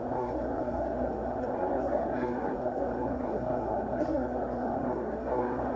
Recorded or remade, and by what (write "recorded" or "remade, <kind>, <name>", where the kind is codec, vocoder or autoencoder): remade, codec, SNAC